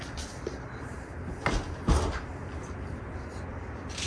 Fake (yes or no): no